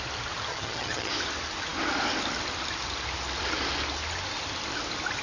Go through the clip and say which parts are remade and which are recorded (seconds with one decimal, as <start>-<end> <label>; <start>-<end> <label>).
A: 0.0-0.5 recorded; 0.5-1.1 remade; 1.1-5.2 recorded